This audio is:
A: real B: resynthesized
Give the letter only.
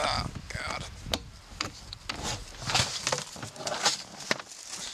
A